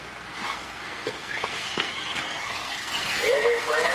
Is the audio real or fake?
fake